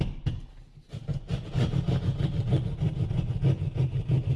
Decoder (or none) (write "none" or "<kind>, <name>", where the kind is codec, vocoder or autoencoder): none